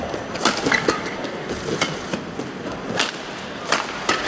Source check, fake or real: real